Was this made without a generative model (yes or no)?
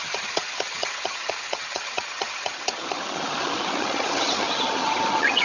no